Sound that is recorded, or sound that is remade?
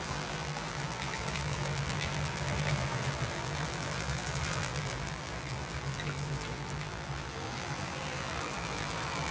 remade